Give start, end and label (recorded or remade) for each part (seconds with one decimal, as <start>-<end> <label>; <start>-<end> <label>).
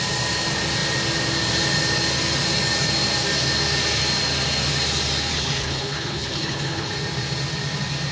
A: 0.0-5.3 recorded; 5.3-6.9 remade; 6.9-8.1 recorded